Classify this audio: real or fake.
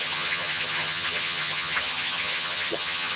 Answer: fake